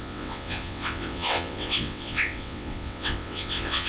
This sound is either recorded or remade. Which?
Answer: remade